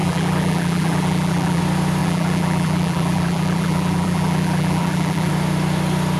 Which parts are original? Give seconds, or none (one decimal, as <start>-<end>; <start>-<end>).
1.6-2.0; 5.3-6.2